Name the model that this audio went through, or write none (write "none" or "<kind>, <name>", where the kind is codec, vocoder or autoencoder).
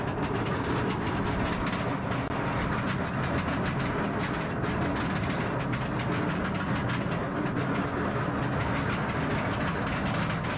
none